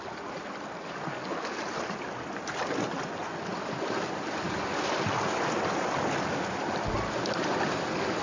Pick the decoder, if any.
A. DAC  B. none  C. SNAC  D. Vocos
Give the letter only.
B